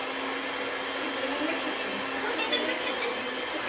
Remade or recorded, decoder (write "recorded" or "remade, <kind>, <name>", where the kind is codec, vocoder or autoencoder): recorded